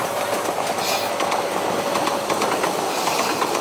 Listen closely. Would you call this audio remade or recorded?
recorded